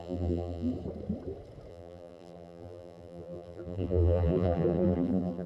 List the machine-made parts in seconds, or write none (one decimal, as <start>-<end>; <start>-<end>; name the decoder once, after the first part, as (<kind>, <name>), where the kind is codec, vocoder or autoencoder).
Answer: 0.0-0.7 (vocoder, BigVGAN v2); 1.7-5.5